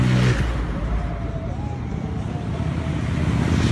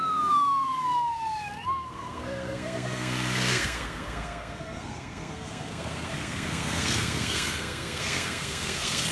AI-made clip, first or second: second